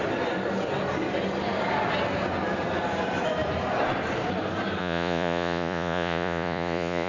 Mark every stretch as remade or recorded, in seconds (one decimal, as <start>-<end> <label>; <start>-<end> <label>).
0.0-4.8 recorded; 4.8-7.1 remade